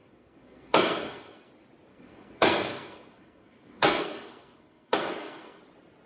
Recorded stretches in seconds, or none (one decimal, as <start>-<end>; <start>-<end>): 1.5-1.9; 5.6-6.1

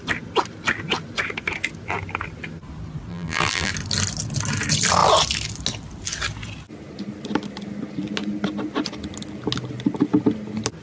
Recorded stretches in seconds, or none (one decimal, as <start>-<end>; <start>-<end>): 0.0-3.1; 3.7-10.8

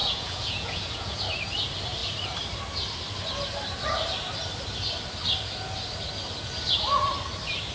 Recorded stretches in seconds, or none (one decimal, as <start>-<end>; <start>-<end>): 1.2-7.7

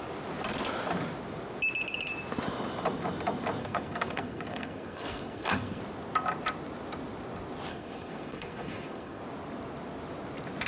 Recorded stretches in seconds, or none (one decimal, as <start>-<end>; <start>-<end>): 0.0-3.6; 5.8-7.7; 9.2-10.7

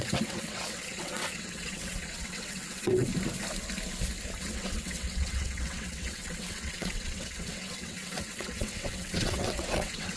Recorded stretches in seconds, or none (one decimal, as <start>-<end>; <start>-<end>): 3.1-4.4